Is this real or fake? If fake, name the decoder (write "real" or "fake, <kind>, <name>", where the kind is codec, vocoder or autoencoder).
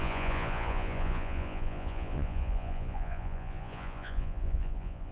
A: fake, vocoder, Vocos